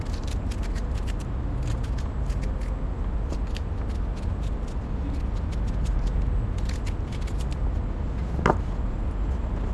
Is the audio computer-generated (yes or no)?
no